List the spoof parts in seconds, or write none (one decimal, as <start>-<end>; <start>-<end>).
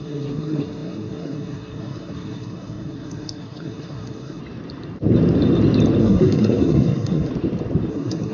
0.0-4.4; 6.0-7.3; 7.9-8.3